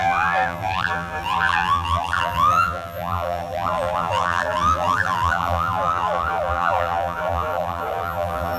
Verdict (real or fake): fake